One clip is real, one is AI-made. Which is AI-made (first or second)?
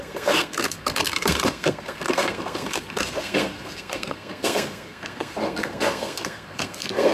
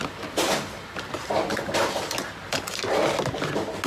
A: first